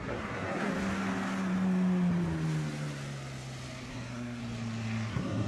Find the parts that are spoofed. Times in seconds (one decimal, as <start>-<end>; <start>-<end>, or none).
0.0-0.7; 3.9-4.4; 5.1-5.5